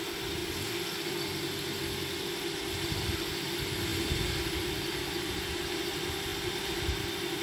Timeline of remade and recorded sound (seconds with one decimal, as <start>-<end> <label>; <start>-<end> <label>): 0.0-7.4 recorded